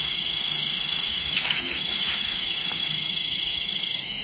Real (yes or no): no